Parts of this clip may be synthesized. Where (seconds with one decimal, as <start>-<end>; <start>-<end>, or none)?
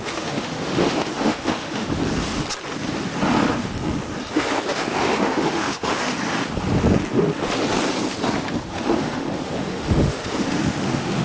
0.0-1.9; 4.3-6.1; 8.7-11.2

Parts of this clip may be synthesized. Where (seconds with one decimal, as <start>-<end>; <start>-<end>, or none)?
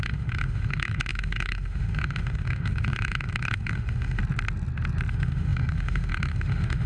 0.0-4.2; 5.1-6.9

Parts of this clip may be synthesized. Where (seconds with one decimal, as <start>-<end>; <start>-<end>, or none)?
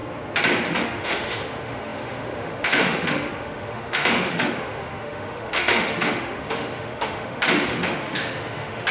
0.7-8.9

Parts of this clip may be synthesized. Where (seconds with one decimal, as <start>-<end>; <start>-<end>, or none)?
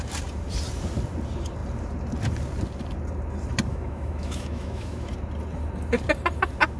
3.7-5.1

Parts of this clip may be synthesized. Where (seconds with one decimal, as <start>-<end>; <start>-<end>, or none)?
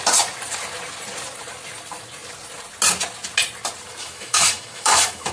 4.0-5.3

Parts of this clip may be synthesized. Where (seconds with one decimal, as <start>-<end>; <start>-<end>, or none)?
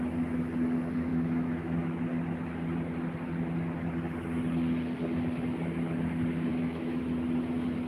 1.1-2.0; 6.5-7.0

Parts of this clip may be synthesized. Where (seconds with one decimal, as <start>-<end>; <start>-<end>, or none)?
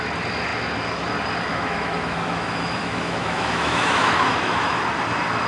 1.5-4.8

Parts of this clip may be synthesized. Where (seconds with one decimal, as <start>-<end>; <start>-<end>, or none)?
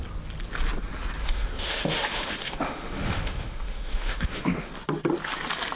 1.2-4.7